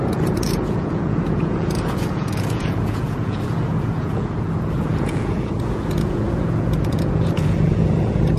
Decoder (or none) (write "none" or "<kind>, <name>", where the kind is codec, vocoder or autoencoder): vocoder, Vocos